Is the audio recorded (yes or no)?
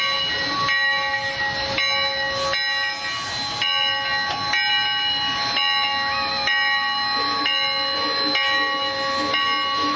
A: yes